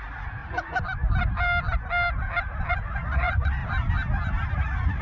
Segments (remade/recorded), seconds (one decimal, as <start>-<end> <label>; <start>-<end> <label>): 0.0-0.4 remade; 0.4-2.7 recorded; 2.7-3.6 remade; 3.6-4.5 recorded; 4.5-5.0 remade